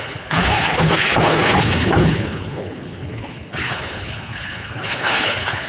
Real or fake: fake